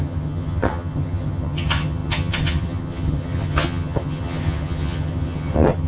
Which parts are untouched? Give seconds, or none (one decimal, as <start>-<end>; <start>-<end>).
none

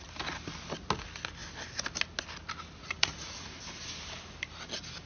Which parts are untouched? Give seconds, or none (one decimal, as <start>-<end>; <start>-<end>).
0.0-2.8; 3.6-5.1

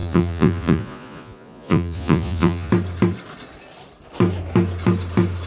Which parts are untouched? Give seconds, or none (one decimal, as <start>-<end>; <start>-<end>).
2.7-5.5

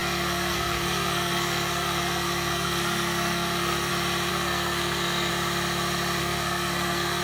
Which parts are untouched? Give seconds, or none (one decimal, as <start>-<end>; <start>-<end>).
3.9-4.3; 5.3-6.2